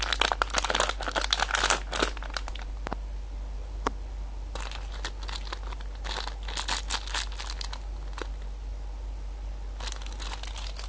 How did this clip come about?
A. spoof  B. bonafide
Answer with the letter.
B